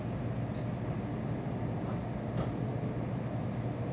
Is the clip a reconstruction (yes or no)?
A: no